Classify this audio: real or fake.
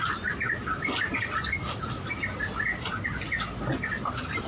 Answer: real